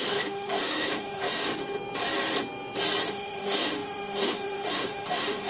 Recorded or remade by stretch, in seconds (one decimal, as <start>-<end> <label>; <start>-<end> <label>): 0.0-1.5 remade; 1.5-3.1 recorded; 3.1-5.5 remade

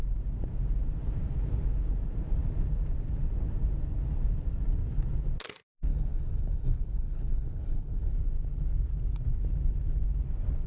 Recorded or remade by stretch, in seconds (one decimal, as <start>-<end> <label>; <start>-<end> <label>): 0.0-5.9 recorded; 5.9-8.1 remade; 8.1-10.7 recorded

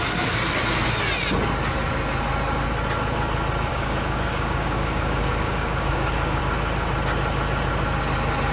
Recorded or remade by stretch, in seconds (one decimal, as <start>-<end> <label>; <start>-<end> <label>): 0.0-3.7 recorded; 3.7-6.4 remade; 6.4-8.5 recorded